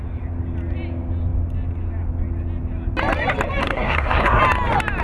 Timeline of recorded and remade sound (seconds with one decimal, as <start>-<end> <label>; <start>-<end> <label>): 0.0-3.6 recorded; 3.6-4.4 remade; 4.4-5.0 recorded